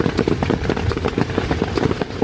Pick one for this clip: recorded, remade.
remade